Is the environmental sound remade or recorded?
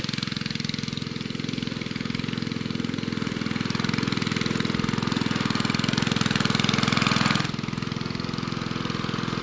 recorded